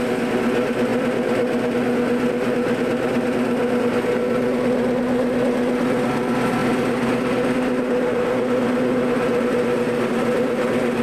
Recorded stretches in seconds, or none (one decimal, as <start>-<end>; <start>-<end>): 0.0-11.0